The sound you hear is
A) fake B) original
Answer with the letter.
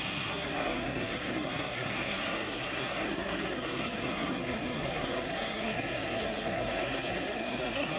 A